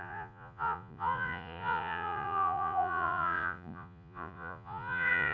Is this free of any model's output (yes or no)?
no